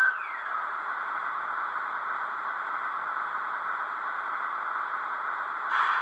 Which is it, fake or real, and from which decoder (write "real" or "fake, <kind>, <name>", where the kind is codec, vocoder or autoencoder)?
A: fake, vocoder, BigVGAN v2